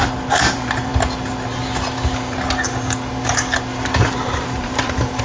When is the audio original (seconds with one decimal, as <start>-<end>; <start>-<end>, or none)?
0.9-4.0